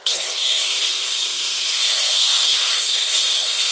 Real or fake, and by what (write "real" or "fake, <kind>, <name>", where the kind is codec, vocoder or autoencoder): fake, codec, SNAC